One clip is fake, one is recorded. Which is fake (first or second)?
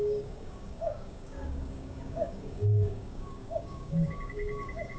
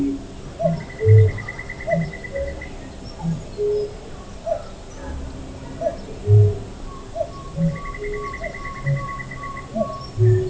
first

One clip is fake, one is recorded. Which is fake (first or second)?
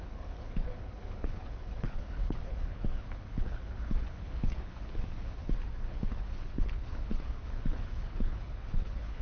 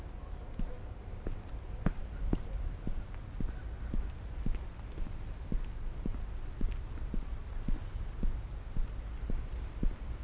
first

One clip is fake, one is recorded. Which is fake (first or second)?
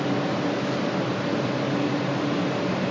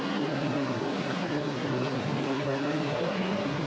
second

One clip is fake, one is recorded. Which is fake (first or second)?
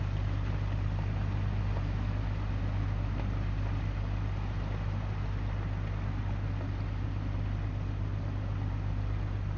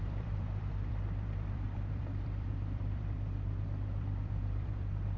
second